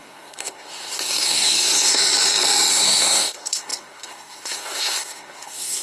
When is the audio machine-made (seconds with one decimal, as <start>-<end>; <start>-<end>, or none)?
0.0-2.0; 2.7-5.8